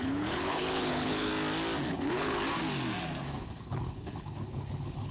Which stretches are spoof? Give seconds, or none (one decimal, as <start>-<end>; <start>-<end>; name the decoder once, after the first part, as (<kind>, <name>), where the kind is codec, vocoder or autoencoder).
0.0-1.3 (codec, HILCodec); 1.9-2.4; 3.4-5.1